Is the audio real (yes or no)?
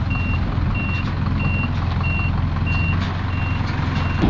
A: yes